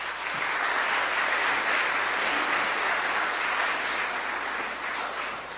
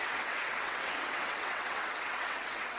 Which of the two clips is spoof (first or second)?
second